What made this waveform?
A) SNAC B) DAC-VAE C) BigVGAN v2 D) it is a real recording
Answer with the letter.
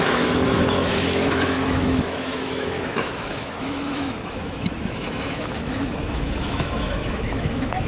B